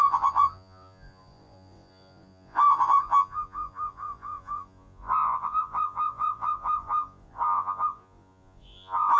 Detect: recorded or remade remade